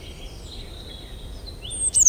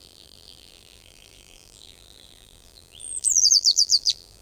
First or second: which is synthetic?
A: second